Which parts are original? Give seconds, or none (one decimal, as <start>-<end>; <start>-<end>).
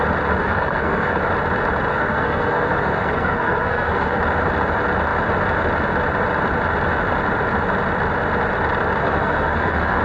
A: 0.0-0.4; 1.2-1.9; 4.2-9.0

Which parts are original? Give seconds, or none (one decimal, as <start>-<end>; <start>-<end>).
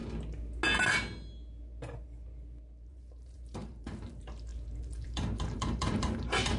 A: 0.0-2.9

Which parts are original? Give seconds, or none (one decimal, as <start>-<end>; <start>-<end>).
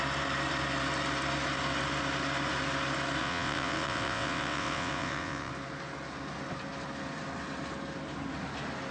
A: 0.0-3.2; 5.5-8.9